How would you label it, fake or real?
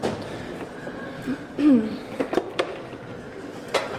real